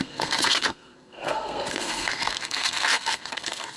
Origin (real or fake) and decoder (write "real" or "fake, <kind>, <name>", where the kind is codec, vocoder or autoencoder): fake, codec, SNAC